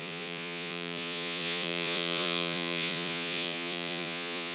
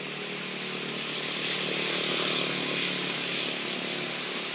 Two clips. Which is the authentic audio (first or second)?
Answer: second